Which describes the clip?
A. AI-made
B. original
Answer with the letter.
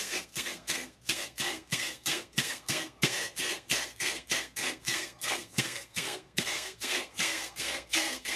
A